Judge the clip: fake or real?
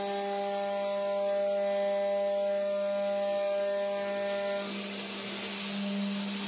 real